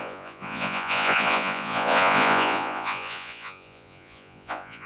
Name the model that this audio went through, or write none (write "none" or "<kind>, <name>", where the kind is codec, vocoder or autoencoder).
vocoder, Vocos